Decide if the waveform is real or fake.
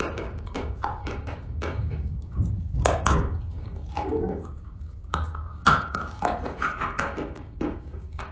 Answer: fake